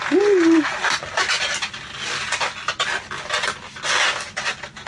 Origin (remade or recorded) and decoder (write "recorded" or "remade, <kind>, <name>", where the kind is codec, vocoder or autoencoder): recorded